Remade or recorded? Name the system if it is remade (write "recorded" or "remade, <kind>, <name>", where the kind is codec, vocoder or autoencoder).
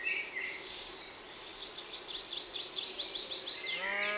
recorded